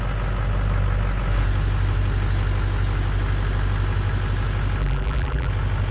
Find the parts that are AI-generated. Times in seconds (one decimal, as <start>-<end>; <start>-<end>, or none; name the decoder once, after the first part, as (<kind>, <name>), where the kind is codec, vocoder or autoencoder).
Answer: 4.8-5.5 (vocoder, BigVGAN v2)